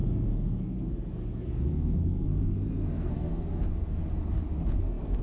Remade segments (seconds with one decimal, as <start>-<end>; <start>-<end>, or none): 0.0-4.0; 4.8-5.2